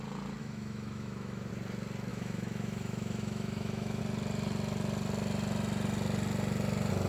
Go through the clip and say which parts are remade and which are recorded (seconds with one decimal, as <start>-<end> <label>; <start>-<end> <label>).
0.0-0.4 recorded; 0.4-1.5 remade; 1.5-2.1 recorded; 2.1-4.0 remade; 4.0-7.1 recorded